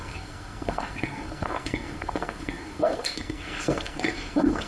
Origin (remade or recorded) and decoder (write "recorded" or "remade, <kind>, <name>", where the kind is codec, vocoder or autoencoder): remade, codec, SNAC